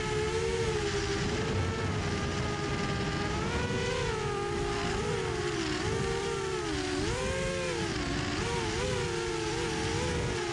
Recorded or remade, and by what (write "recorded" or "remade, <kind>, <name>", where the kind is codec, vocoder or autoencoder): recorded